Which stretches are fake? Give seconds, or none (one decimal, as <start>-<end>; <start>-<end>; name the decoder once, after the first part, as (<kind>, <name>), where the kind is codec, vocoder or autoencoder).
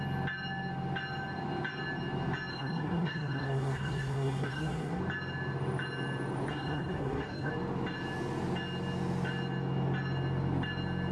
2.5-5.0 (codec, SNAC); 6.5-7.5